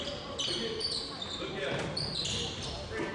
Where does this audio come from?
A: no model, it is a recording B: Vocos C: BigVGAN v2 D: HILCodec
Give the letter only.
A